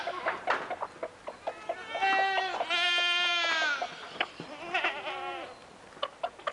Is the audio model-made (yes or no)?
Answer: no